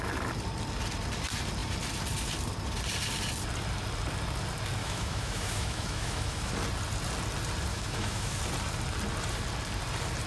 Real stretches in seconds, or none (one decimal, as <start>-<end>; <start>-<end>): 0.0-4.8; 6.5-7.7; 8.4-10.3